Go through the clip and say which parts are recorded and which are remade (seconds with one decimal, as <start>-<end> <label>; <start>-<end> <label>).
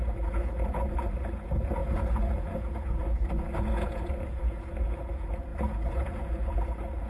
0.0-7.1 remade